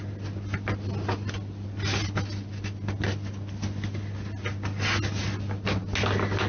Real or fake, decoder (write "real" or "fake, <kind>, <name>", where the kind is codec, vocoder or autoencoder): real